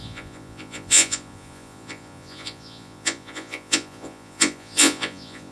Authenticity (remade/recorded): remade